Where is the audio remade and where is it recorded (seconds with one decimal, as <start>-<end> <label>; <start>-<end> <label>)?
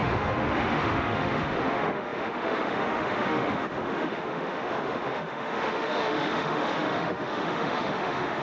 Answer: 0.0-8.4 remade